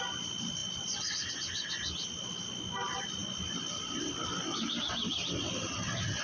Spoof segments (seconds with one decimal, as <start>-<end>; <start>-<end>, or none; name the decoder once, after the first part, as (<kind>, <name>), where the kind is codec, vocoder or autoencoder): none